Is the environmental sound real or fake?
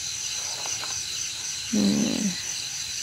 fake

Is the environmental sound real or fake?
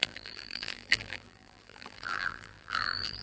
fake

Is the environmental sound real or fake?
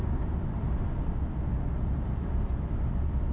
real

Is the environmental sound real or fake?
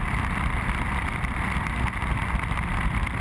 real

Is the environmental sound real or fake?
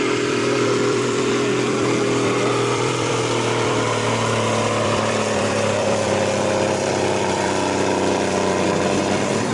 fake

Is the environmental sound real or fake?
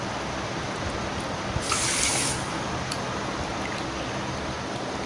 real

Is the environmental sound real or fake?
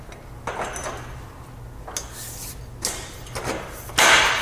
real